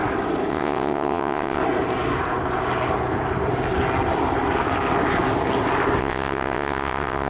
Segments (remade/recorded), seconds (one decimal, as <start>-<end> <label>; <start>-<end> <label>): 0.0-0.5 recorded; 0.5-1.6 remade; 1.6-6.0 recorded; 6.0-7.3 remade